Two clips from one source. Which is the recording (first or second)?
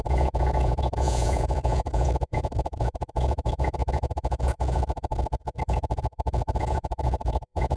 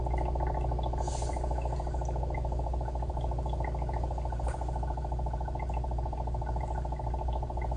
second